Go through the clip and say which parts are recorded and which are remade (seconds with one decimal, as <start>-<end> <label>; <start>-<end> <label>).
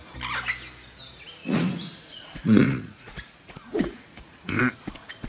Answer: 0.0-1.4 recorded; 1.4-4.6 remade; 4.6-5.3 recorded